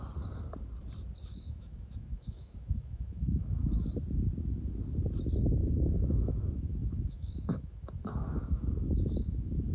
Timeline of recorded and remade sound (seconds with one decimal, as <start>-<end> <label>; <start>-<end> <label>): 0.0-1.3 recorded; 1.3-3.9 remade; 3.9-5.6 recorded; 5.6-9.7 remade